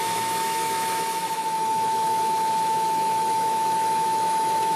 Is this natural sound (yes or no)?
no